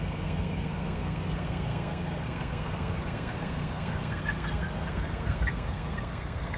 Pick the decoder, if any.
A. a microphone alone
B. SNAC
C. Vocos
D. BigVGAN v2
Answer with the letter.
B